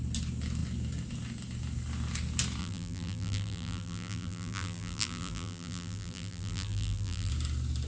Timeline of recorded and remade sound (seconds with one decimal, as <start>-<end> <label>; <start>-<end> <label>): 0.0-2.6 recorded; 2.6-7.3 remade; 7.3-7.9 recorded